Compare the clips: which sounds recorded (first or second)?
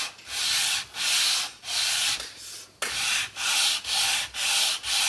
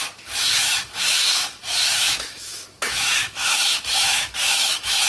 first